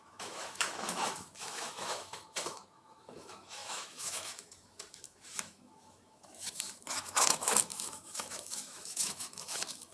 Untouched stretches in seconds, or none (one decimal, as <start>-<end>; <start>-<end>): none